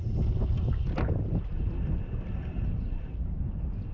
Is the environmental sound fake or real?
real